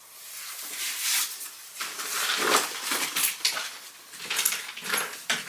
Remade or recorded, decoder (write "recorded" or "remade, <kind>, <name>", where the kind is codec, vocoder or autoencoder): recorded